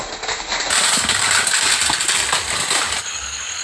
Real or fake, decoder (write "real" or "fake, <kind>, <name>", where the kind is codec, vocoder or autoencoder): real